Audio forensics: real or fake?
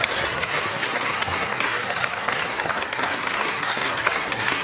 fake